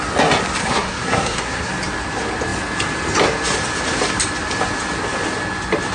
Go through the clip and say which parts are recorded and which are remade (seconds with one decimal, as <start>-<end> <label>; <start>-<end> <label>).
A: 0.0-0.6 recorded; 0.6-1.7 remade; 1.7-5.9 recorded